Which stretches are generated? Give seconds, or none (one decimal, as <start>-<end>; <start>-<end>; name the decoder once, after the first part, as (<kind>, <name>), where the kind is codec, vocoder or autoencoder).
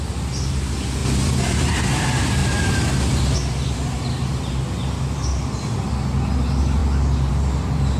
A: 2.4-3.0 (vocoder, BigVGAN v2)